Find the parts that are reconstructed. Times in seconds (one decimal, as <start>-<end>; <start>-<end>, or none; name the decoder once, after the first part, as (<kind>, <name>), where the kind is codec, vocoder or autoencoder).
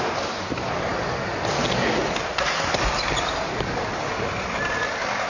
none